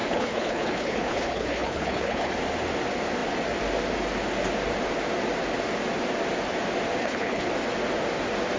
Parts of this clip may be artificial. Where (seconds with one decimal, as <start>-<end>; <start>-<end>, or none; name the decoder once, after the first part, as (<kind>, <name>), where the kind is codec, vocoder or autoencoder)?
0.0-2.3 (codec, HILCodec); 7.0-7.5